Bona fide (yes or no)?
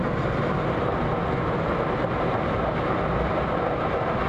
yes